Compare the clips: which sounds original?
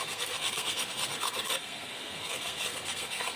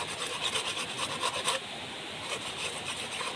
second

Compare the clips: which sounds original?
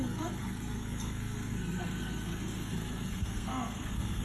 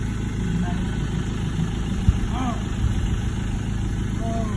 second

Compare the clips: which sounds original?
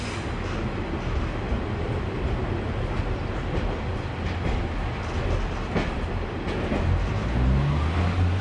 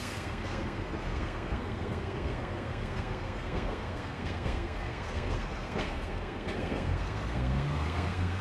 first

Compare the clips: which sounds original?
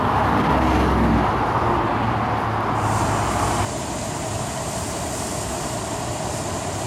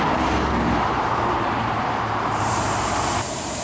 first